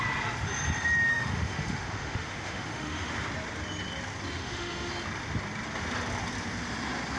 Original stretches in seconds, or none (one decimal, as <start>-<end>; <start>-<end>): 0.0-1.1; 3.1-4.4; 4.9-7.2